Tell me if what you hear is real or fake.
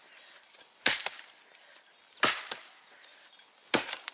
real